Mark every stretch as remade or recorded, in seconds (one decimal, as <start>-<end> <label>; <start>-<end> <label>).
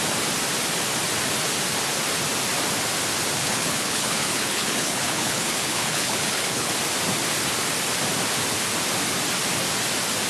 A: 0.0-3.4 recorded; 3.4-6.7 remade; 6.7-10.3 recorded